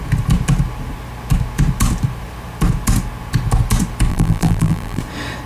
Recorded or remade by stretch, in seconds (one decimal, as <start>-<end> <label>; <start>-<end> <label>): 0.0-4.1 recorded; 4.1-5.0 remade; 5.0-5.5 recorded